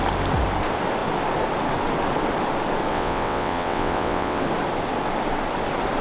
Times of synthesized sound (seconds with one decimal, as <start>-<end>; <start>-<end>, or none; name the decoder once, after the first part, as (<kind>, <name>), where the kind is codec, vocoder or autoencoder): 2.9-4.4 (vocoder, WaveNeXt)